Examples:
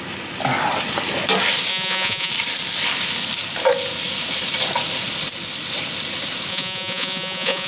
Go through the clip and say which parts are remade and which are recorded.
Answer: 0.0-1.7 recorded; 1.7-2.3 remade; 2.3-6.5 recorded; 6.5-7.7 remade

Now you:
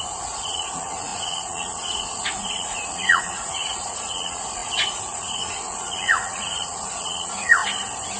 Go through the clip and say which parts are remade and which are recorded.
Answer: 0.0-7.6 remade; 7.6-8.2 recorded

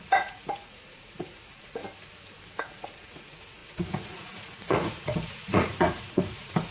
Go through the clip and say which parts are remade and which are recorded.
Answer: 0.0-1.8 remade; 1.8-2.6 recorded; 2.6-6.7 remade

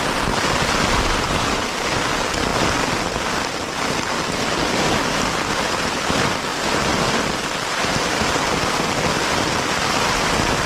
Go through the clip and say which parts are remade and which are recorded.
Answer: 0.0-10.7 recorded

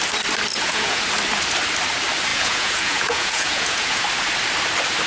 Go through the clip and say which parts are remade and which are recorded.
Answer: 0.0-0.5 recorded; 0.5-1.0 remade; 1.0-2.3 recorded; 2.3-4.0 remade; 4.0-5.1 recorded